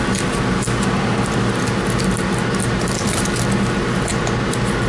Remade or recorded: recorded